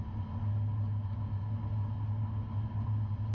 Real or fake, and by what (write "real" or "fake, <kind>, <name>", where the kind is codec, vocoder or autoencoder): real